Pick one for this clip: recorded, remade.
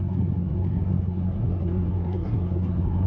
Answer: remade